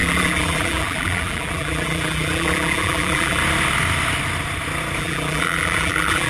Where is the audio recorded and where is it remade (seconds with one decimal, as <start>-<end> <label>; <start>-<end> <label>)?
0.0-3.4 remade; 3.4-5.0 recorded; 5.0-6.3 remade